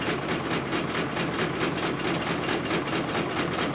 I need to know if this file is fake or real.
real